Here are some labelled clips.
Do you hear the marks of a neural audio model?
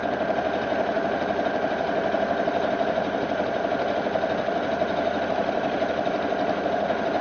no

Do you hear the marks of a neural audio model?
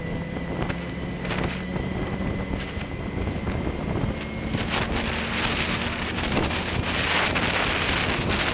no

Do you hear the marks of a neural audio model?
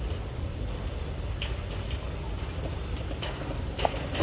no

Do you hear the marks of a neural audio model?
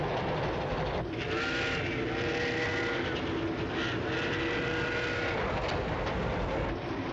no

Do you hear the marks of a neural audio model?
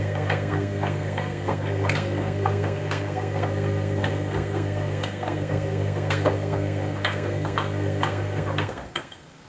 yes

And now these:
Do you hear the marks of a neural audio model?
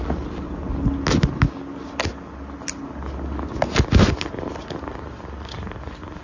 no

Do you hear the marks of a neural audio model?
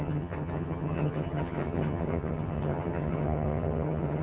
yes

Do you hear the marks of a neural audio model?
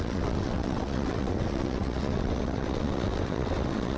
yes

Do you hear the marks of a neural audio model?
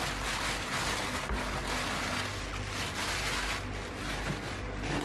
no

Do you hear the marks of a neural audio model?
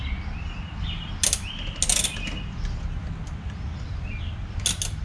no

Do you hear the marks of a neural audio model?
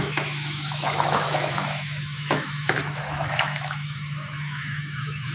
yes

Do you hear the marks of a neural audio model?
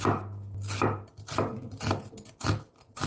no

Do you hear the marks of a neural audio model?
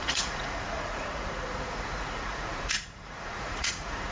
yes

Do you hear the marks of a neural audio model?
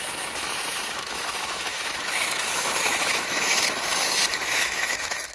yes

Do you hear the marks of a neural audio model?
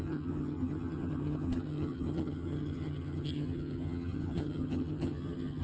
yes